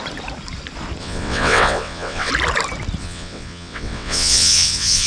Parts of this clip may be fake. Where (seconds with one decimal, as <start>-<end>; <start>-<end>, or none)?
1.0-2.3; 3.0-5.1